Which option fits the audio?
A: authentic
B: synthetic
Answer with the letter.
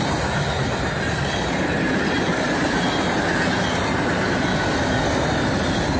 A